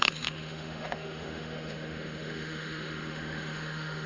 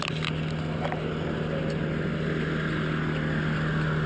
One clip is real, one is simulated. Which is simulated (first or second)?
first